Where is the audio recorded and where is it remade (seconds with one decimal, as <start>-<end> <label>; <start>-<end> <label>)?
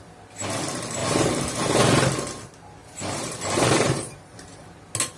0.0-1.0 recorded; 1.0-1.8 remade; 1.8-2.8 recorded; 2.8-4.8 remade; 4.8-5.2 recorded